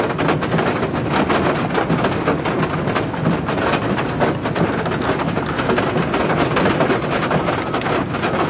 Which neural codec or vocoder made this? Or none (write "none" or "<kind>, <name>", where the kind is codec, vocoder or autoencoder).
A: none